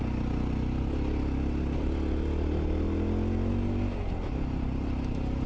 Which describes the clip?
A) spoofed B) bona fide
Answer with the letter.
B